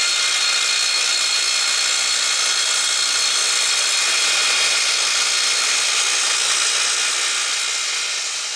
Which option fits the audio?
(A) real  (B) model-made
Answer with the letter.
A